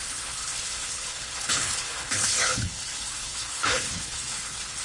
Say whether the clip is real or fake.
fake